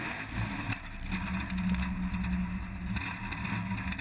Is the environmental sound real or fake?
real